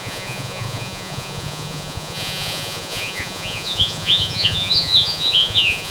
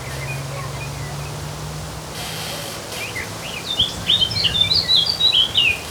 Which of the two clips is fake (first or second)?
first